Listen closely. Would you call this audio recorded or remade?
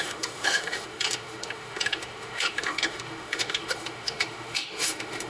remade